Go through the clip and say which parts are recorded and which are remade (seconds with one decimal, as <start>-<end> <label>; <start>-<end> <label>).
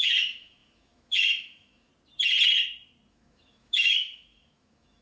0.0-1.9 remade; 1.9-3.1 recorded; 3.1-5.0 remade